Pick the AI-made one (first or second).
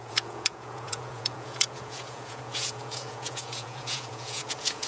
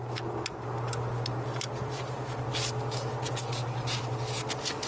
first